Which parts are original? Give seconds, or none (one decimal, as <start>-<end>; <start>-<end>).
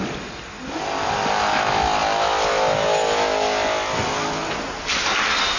0.0-5.6